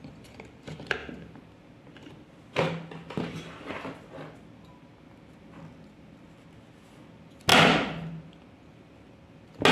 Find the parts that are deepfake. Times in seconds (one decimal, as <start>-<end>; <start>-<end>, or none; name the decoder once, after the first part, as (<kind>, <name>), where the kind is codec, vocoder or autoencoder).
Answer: none